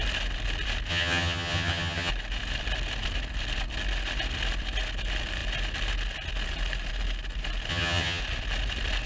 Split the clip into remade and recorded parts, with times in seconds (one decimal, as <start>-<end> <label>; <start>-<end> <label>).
0.0-0.9 recorded; 0.9-2.1 remade; 2.1-7.7 recorded; 7.7-8.2 remade; 8.2-9.1 recorded

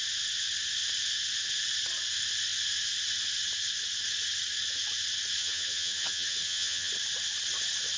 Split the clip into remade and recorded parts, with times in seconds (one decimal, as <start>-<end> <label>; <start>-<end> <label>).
0.0-5.4 recorded; 5.4-6.9 remade; 6.9-8.0 recorded

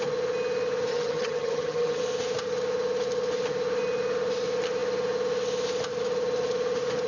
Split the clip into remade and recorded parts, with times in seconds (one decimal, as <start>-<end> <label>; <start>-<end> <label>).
0.0-0.9 recorded; 0.9-2.0 remade; 2.0-7.1 recorded

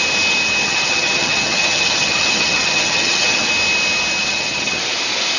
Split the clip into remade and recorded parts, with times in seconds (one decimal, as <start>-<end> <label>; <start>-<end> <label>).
0.0-0.6 recorded; 0.6-3.5 remade; 3.5-4.2 recorded; 4.2-4.8 remade; 4.8-5.4 recorded